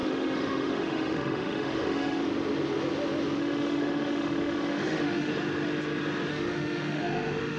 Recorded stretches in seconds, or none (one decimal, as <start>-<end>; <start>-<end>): 2.2-3.4; 5.3-6.3